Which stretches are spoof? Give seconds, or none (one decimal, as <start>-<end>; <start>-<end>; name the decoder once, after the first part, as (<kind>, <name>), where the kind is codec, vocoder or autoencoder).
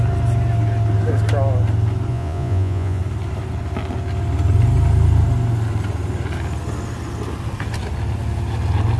2.1-3.0 (vocoder, Vocos)